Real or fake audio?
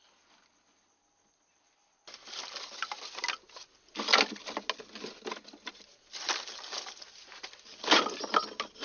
real